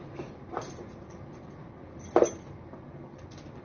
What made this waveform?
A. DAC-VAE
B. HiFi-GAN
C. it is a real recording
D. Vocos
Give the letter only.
C